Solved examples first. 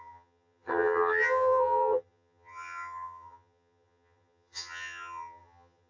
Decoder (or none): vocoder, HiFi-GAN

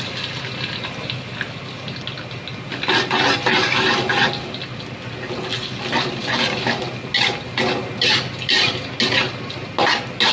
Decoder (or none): none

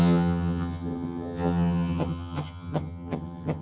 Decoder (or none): vocoder, HiFi-GAN